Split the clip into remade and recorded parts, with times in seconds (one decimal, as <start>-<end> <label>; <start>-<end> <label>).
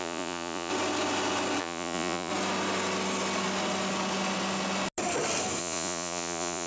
0.0-0.7 remade; 0.7-1.6 recorded; 1.6-2.3 remade; 2.3-5.6 recorded; 5.6-6.7 remade